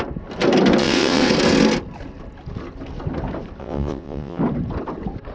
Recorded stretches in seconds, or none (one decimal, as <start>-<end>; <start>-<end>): 0.0-0.8; 1.3-3.6; 4.4-5.3